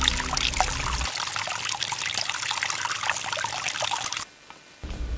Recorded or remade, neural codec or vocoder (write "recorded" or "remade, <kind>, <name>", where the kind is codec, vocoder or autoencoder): recorded